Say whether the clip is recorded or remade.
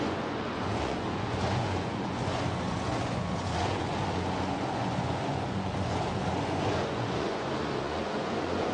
remade